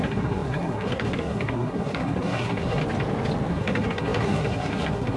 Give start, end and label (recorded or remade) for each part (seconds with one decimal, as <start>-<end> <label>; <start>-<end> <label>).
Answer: 0.0-2.8 remade; 2.8-3.5 recorded; 3.5-5.2 remade